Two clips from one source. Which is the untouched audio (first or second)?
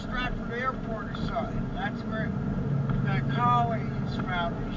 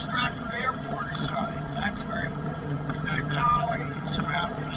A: first